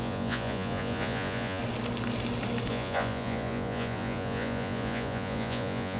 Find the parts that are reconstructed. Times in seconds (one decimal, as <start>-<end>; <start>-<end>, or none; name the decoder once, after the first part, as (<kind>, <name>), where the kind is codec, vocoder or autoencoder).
0.0-1.6 (vocoder, Vocos); 2.7-6.0